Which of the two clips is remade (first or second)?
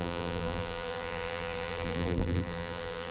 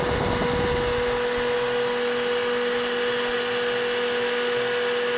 first